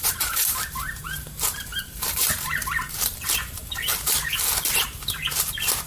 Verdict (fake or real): fake